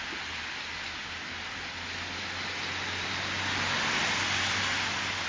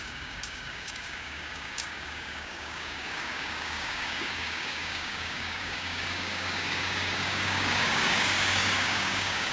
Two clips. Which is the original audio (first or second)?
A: first